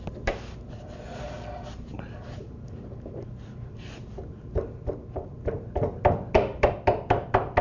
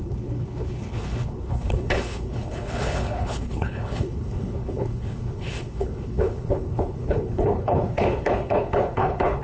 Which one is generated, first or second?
second